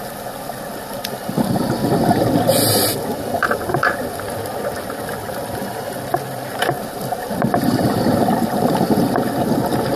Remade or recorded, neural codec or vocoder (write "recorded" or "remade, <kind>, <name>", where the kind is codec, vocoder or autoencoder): recorded